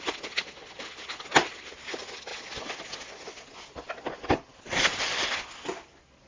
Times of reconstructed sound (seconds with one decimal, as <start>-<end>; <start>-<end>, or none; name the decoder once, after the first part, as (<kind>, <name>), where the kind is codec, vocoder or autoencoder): none